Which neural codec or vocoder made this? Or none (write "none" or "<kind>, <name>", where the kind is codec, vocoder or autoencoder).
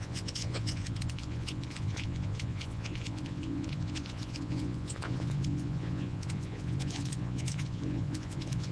vocoder, Vocos